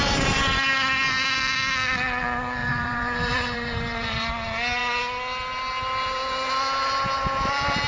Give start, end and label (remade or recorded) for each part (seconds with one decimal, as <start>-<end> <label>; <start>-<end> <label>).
0.0-2.6 recorded; 2.6-4.3 remade; 4.3-7.9 recorded